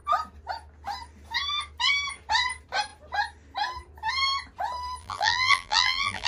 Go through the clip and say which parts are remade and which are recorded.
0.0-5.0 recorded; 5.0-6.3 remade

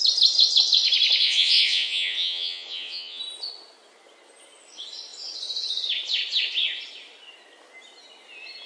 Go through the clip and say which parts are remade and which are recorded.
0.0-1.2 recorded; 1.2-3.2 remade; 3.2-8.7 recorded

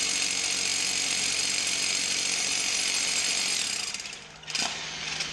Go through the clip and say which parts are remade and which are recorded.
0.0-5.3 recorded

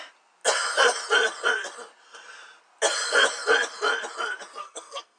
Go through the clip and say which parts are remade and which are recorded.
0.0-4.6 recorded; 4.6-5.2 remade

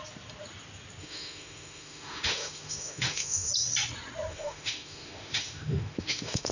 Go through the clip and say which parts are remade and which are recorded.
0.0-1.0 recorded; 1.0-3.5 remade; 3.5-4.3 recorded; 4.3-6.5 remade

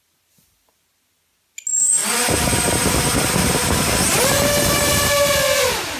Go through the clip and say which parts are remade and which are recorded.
0.0-6.0 recorded